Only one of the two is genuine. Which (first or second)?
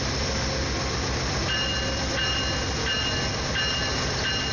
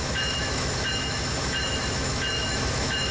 first